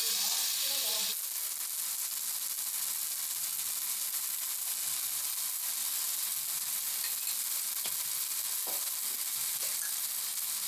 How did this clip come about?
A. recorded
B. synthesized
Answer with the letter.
A